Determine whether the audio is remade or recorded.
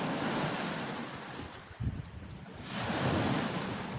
recorded